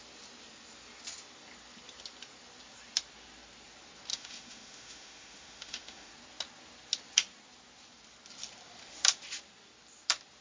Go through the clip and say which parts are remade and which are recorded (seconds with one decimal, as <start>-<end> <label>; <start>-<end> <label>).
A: 0.0-4.1 recorded; 4.1-6.1 remade; 6.1-10.4 recorded